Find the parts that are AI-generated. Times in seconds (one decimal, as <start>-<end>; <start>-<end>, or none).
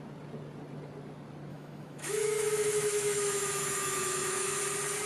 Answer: 1.5-4.6